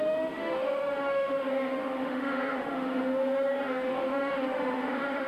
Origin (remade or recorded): remade